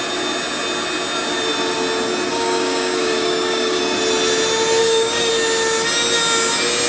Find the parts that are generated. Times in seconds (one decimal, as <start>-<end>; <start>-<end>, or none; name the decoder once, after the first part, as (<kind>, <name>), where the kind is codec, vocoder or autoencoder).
2.3-3.8 (codec, DAC); 4.8-5.3